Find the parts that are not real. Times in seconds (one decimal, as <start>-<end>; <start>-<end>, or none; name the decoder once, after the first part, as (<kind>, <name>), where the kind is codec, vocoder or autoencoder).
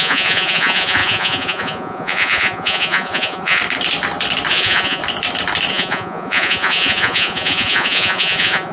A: 0.0-3.6 (vocoder, Vocos); 4.5-5.0; 5.7-8.7